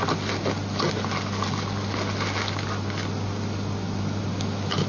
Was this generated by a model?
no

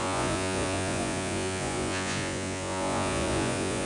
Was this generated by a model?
yes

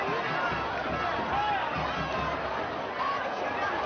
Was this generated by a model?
no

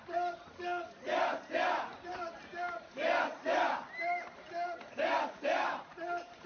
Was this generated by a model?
yes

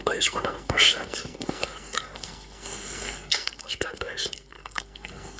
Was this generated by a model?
yes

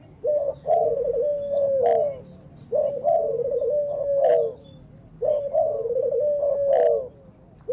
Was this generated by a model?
no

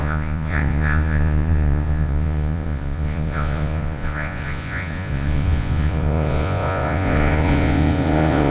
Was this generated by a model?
yes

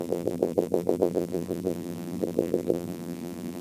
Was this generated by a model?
yes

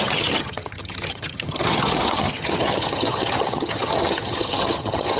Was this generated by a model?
yes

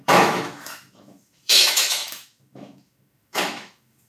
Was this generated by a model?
yes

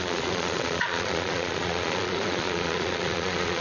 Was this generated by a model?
yes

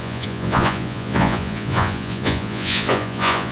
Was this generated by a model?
yes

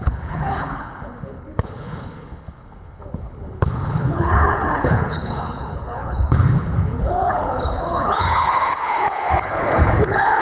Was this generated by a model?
yes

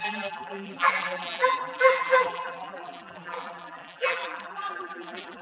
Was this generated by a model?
yes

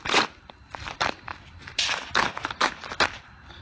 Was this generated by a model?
no